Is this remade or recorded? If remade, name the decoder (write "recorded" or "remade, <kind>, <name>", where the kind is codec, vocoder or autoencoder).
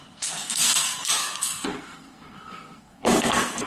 remade, codec, SNAC